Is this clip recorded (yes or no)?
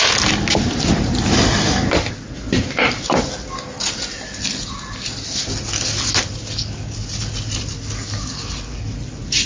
yes